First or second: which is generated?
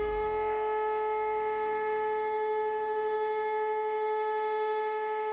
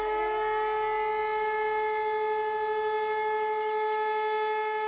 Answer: first